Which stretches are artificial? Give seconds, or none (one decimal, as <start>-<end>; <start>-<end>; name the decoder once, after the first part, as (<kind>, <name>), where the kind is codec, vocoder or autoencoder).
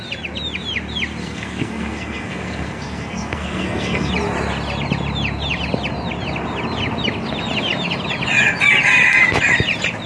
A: 1.2-4.1 (codec, SNAC)